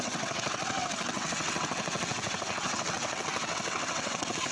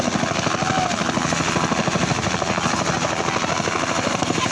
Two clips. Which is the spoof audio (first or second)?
first